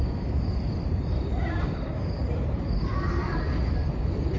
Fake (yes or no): no